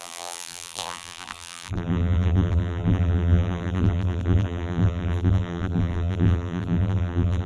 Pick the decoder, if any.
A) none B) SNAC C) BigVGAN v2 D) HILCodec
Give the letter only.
C